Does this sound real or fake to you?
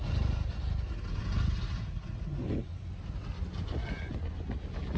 real